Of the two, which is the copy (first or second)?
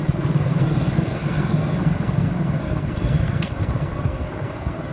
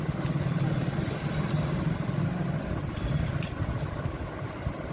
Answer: first